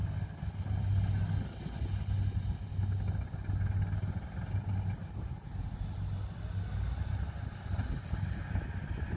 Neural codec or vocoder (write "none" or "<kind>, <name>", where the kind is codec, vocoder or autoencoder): none